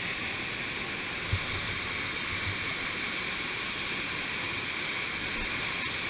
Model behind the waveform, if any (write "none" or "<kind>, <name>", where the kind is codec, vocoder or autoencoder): none